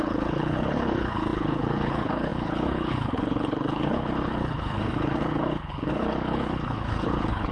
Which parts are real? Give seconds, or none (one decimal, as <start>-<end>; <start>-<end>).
none